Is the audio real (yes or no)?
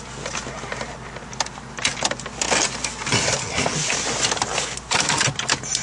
yes